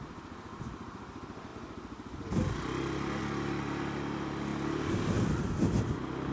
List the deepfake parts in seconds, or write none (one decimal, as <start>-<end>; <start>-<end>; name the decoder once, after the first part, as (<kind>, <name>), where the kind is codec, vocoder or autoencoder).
none